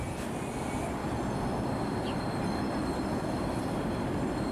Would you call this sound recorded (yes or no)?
yes